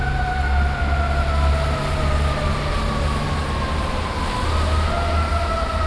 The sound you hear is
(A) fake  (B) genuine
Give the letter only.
B